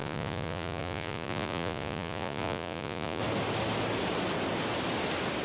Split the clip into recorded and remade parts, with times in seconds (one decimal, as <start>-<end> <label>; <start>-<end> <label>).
0.0-3.2 remade; 3.2-5.4 recorded